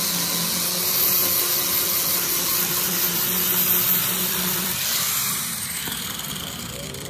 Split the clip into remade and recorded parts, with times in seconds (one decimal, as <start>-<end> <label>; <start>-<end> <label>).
0.0-2.7 recorded; 2.7-3.2 remade; 3.2-4.0 recorded; 4.0-7.1 remade